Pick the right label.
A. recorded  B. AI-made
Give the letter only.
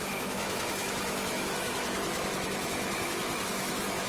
B